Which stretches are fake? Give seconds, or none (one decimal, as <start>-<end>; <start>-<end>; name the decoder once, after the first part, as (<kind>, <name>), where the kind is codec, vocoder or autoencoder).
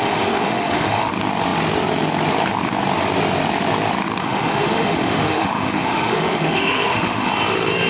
0.0-1.1 (autoencoder, DAC-VAE); 4.2-7.3